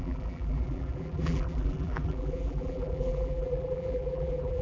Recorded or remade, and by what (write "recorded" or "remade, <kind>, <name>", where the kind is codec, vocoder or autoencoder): remade, vocoder, BigVGAN v2